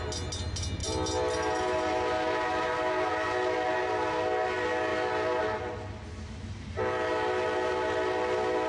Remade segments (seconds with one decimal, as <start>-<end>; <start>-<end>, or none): none